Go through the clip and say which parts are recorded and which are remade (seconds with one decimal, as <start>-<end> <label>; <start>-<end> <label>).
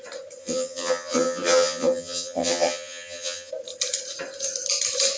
0.0-0.4 recorded; 0.4-3.5 remade; 3.5-5.2 recorded